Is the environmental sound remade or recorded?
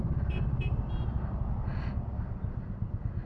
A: recorded